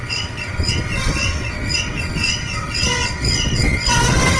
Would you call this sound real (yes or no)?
no